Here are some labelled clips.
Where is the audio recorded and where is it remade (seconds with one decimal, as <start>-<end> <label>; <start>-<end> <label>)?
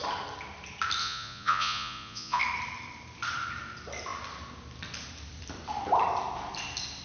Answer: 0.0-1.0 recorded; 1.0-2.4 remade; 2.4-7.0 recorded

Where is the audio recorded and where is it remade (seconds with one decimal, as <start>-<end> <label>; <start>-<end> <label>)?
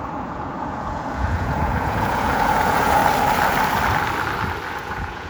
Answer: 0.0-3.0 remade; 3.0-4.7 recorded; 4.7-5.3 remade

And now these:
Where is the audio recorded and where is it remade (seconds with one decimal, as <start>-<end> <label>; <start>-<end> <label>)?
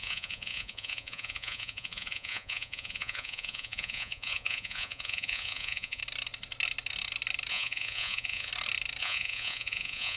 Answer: 0.0-6.0 remade; 6.0-7.5 recorded; 7.5-8.5 remade; 8.5-9.0 recorded; 9.0-10.2 remade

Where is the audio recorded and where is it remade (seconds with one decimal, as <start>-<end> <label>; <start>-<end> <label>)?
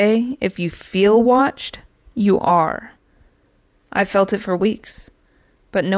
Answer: 0.0-0.9 recorded; 0.9-2.5 remade; 2.5-3.8 recorded; 3.8-5.2 remade; 5.2-6.0 recorded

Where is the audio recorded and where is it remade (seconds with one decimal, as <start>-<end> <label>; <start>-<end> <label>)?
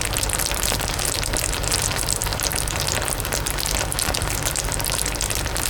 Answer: 0.0-5.7 recorded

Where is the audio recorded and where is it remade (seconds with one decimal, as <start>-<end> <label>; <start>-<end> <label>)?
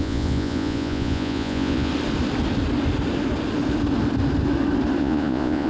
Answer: 0.0-1.9 remade; 1.9-5.0 recorded; 5.0-5.7 remade